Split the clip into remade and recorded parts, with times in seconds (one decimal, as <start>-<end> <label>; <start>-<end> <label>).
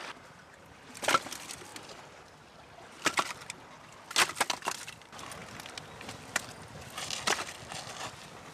0.0-8.5 recorded